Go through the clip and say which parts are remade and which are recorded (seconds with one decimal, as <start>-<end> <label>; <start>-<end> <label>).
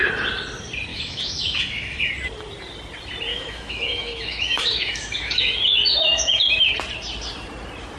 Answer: 0.0-0.9 recorded; 0.9-2.1 remade; 2.1-3.3 recorded; 3.3-6.7 remade; 6.7-8.0 recorded